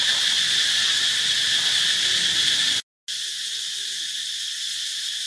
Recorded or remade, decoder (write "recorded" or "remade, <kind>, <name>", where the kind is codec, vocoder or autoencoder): recorded